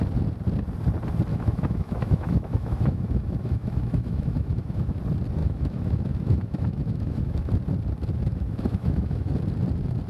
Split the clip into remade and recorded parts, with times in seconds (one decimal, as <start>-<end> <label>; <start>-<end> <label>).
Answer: 0.0-1.3 recorded; 1.3-5.0 remade; 5.0-5.4 recorded; 5.4-7.5 remade; 7.5-8.3 recorded; 8.3-9.3 remade; 9.3-10.1 recorded